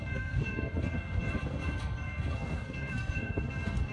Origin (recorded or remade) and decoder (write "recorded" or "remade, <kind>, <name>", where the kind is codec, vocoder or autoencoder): remade, codec, SNAC